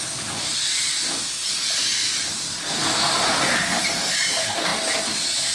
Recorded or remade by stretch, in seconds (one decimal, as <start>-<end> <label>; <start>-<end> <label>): 0.0-5.5 recorded